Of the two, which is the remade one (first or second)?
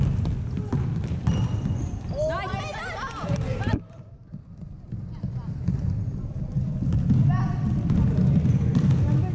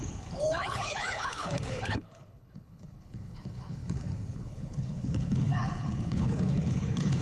second